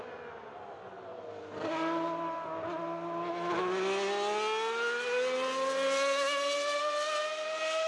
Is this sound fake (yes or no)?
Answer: no